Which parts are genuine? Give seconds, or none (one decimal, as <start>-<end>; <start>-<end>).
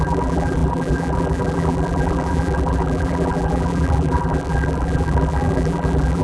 none